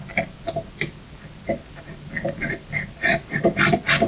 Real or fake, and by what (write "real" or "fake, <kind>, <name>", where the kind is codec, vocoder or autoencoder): real